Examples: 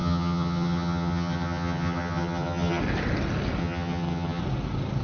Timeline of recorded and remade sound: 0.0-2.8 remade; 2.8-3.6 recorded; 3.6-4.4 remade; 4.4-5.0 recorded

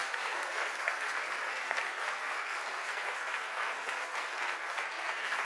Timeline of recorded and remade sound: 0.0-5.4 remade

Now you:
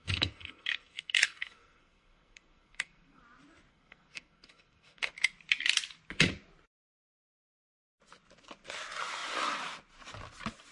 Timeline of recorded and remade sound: 0.0-3.2 remade; 3.2-3.7 recorded; 3.7-5.1 remade; 5.1-10.7 recorded